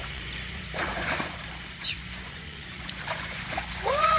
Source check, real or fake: fake